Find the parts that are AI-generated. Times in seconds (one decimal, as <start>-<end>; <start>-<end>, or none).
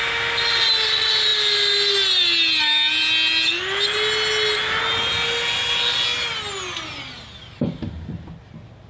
none